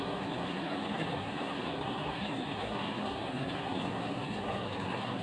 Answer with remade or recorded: remade